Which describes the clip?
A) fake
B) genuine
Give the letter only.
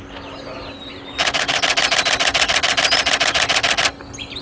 B